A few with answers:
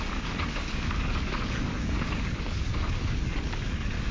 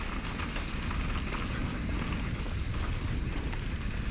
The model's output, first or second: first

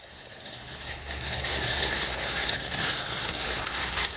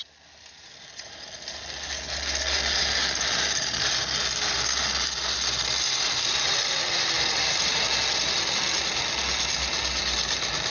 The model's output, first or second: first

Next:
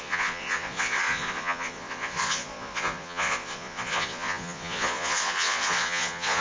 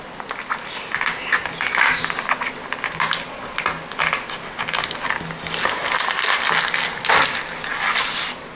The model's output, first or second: first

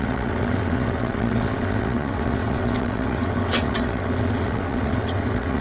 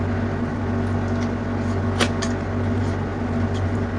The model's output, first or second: first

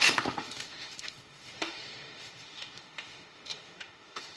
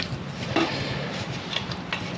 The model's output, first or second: first